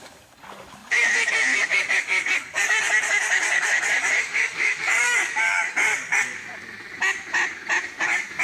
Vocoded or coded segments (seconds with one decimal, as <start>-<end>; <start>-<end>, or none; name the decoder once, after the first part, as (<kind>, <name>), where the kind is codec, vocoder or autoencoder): 0.0-6.4 (codec, DAC); 8.0-8.4